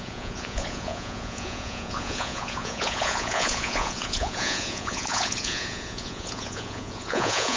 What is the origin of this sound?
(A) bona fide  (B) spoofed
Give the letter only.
B